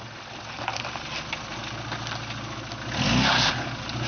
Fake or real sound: real